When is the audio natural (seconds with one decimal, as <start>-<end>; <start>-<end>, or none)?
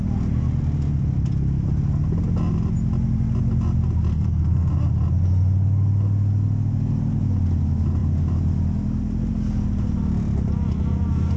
0.0-4.1; 4.7-11.4